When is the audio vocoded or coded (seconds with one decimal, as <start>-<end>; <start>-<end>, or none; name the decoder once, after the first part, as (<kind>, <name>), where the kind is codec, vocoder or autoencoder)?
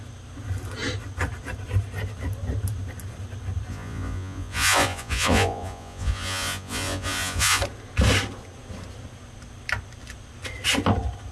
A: 3.7-7.6 (vocoder, Vocos)